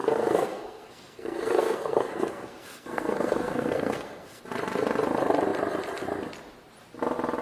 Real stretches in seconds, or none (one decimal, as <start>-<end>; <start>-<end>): 4.4-7.4